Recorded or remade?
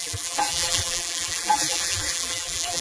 remade